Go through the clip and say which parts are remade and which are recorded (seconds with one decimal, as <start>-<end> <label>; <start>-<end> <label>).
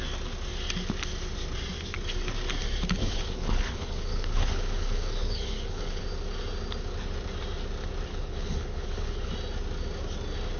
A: 0.0-3.0 recorded; 3.0-6.0 remade; 6.0-8.1 recorded; 8.1-9.3 remade; 9.3-10.6 recorded